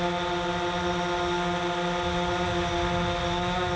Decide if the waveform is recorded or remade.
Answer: recorded